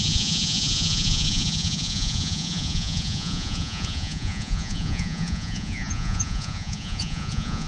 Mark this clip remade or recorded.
remade